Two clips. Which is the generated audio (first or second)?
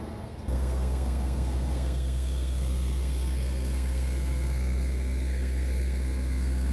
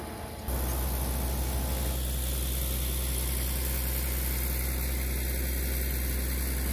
first